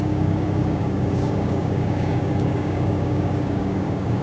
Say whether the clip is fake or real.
fake